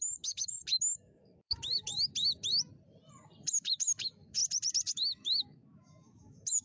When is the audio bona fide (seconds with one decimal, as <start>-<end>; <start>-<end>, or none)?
1.9-3.5; 4.4-4.9